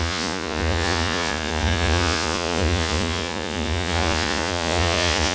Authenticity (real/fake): fake